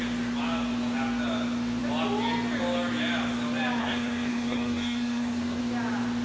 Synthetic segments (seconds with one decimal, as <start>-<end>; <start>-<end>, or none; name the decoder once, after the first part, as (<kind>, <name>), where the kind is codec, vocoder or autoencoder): 3.8-5.6 (codec, SNAC)